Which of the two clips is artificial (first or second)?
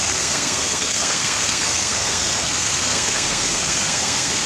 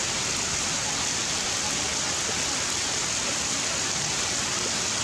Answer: first